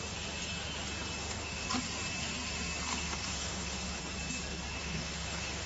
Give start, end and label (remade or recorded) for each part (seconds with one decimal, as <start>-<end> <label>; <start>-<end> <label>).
0.0-1.2 recorded; 1.2-1.7 remade; 1.7-2.9 recorded; 2.9-4.0 remade; 4.0-4.8 recorded; 4.8-5.7 remade